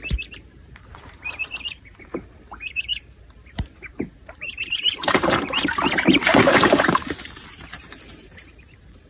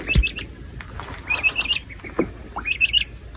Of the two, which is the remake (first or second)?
first